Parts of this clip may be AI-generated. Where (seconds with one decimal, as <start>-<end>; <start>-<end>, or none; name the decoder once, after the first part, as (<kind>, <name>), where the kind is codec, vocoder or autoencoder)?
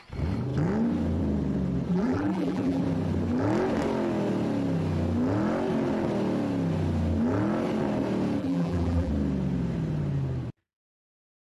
1.9-2.8 (vocoder, BigVGAN v2); 8.4-9.1